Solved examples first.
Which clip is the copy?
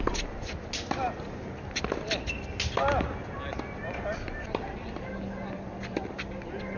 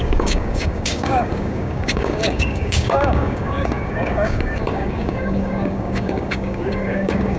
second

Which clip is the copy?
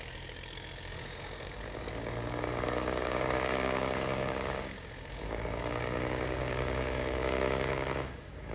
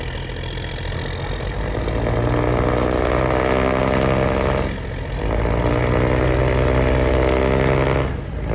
first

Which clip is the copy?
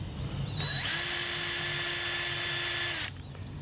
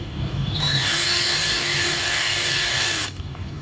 second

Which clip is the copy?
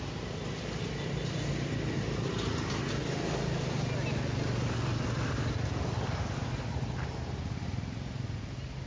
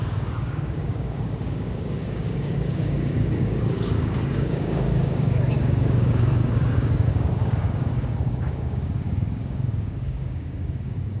second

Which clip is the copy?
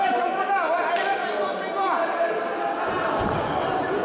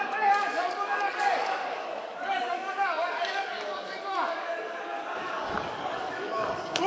second